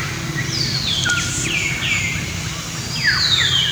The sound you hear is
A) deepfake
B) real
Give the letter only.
B